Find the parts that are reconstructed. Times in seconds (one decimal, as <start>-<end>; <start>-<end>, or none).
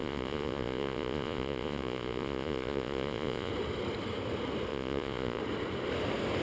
0.0-3.5; 4.7-5.4